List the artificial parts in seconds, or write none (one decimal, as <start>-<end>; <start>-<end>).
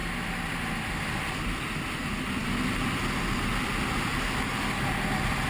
none